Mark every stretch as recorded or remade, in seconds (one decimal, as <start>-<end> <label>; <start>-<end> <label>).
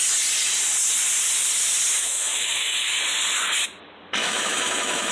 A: 0.0-2.0 recorded; 2.0-3.0 remade; 3.0-4.2 recorded; 4.2-5.1 remade